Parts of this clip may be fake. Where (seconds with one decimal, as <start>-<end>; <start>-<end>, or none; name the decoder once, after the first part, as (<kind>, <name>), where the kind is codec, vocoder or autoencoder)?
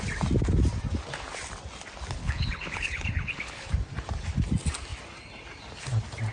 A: 2.2-3.7 (codec, HILCodec)